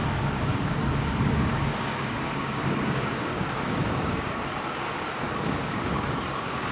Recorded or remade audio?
remade